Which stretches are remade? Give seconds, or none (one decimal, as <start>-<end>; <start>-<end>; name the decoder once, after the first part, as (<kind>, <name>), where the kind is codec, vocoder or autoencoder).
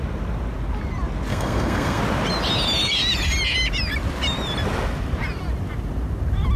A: 1.3-2.0 (codec, SNAC)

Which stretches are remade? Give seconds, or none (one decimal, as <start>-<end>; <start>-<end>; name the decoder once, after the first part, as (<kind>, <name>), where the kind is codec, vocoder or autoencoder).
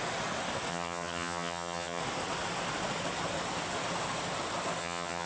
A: 0.7-2.0 (vocoder, HiFi-GAN); 4.8-5.3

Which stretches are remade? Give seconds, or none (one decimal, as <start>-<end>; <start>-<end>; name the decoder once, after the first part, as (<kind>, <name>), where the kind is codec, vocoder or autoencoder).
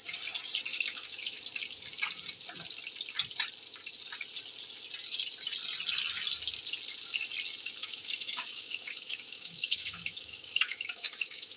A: 0.7-1.4 (autoencoder, DAC-VAE); 7.8-11.6